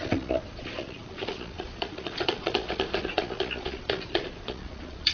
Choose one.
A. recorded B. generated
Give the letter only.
B